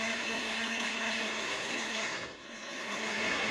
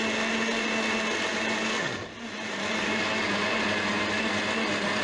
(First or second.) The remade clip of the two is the first